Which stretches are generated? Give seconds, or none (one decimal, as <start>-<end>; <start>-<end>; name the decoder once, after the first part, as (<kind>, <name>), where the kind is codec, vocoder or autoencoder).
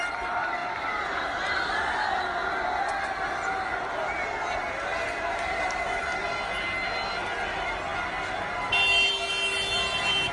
none